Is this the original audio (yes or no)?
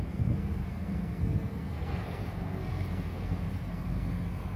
no